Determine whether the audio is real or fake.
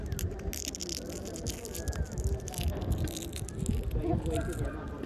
real